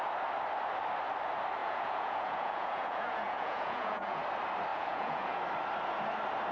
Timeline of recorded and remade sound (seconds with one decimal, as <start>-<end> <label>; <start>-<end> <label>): 0.0-1.6 recorded; 1.6-4.2 remade; 4.2-4.7 recorded; 4.7-5.4 remade; 5.4-6.5 recorded